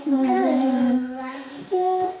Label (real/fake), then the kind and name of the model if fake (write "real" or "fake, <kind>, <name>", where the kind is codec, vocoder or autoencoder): fake, codec, SNAC